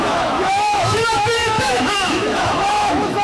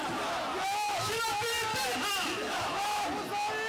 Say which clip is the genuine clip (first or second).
second